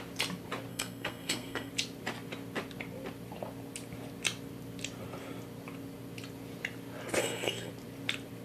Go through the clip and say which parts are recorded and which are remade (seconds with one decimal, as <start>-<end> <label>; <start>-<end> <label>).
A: 0.0-0.7 recorded; 0.7-1.7 remade; 1.7-7.2 recorded; 7.2-7.7 remade; 7.7-8.4 recorded